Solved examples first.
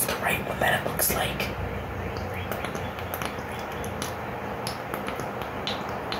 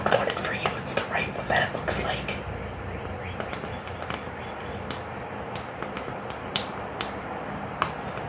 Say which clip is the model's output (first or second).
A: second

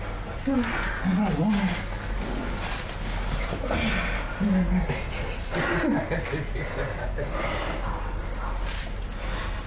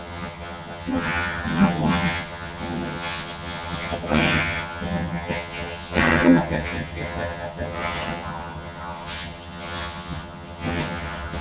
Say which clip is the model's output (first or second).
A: second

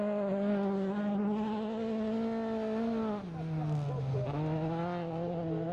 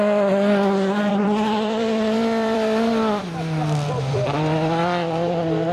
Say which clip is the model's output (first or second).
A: second